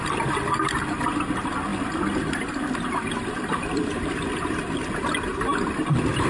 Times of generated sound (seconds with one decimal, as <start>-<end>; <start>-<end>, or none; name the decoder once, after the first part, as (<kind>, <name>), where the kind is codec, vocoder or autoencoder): 5.3-5.8 (vocoder, BigVGAN v2)